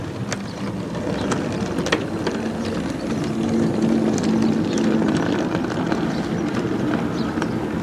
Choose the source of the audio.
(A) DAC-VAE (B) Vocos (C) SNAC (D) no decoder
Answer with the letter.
D